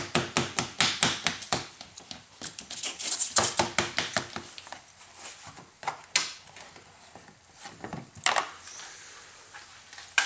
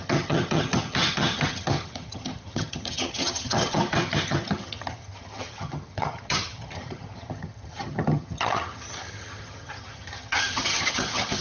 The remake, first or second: second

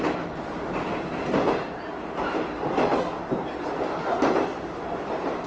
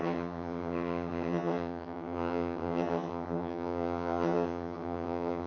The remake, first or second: second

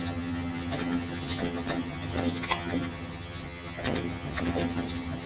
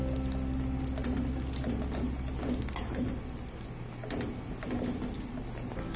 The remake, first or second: first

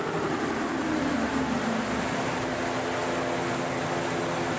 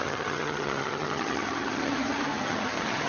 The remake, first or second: second